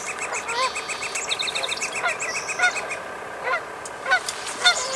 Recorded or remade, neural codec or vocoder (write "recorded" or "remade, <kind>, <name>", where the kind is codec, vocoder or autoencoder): recorded